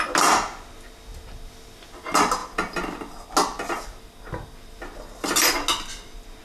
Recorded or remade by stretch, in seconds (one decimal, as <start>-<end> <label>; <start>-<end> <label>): 0.0-6.4 recorded